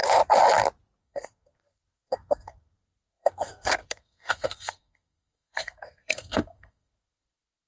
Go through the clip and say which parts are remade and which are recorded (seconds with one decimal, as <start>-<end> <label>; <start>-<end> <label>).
0.0-1.0 recorded; 1.0-7.7 remade